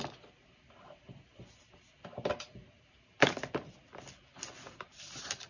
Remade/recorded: recorded